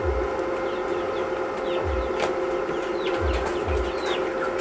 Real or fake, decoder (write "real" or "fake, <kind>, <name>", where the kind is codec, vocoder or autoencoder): real